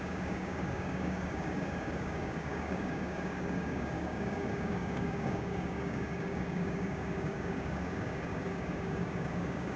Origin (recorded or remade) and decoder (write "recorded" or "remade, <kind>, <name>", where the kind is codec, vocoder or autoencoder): remade, codec, DAC